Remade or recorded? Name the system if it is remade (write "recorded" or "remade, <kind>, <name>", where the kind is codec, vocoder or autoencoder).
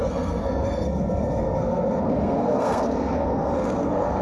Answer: remade, codec, SNAC